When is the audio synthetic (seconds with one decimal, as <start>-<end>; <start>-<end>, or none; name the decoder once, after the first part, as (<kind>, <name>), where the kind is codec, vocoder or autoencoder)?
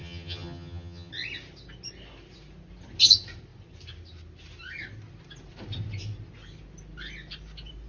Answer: 0.0-1.1 (vocoder, HiFi-GAN)